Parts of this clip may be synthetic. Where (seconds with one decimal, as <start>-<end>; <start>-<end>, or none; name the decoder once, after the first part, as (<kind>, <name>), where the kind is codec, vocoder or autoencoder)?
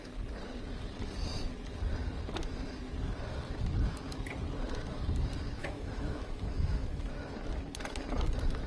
5.6-7.1 (autoencoder, DAC-VAE)